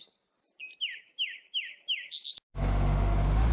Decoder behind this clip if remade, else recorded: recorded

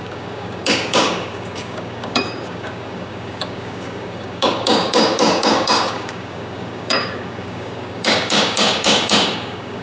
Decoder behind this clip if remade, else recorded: remade, codec, DAC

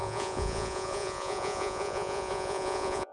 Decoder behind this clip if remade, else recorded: remade, vocoder, Vocos